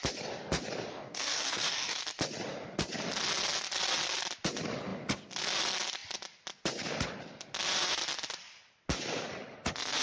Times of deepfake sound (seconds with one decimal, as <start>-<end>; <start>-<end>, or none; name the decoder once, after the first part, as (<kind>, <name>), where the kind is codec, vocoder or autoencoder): 0.9-2.0 (codec, DAC)